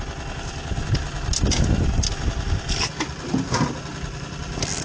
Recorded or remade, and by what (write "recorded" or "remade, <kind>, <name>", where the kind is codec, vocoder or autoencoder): recorded